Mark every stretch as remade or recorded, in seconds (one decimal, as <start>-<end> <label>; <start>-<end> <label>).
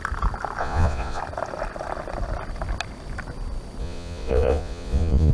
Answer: 0.0-0.6 recorded; 0.6-1.2 remade; 1.2-3.8 recorded; 3.8-5.3 remade